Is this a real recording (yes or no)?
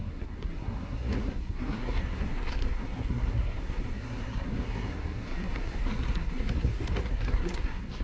no